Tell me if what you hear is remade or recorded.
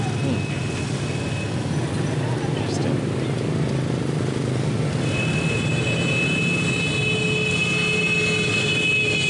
recorded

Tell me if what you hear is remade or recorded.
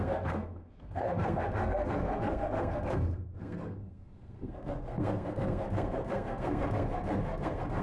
remade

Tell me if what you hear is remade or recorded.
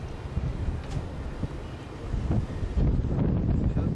recorded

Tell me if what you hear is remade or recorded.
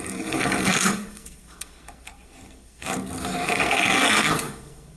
remade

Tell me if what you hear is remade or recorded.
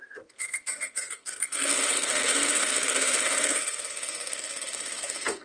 remade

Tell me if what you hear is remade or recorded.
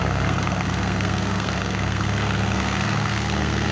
remade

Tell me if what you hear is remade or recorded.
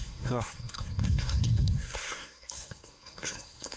remade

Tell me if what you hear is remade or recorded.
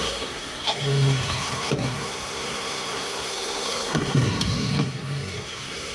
remade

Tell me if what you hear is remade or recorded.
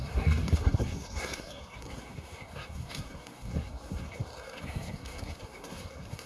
remade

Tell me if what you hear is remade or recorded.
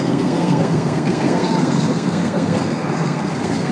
remade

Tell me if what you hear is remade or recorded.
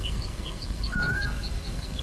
remade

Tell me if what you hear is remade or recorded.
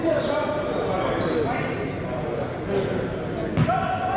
recorded